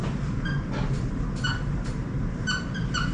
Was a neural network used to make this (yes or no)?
no